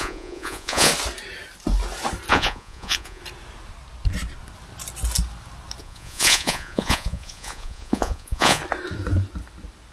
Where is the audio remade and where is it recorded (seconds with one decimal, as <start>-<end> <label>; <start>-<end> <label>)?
0.0-0.9 remade; 0.9-2.3 recorded; 2.3-3.2 remade; 3.2-5.8 recorded; 5.8-8.6 remade; 8.6-9.9 recorded